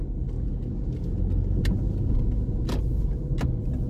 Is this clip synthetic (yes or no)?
no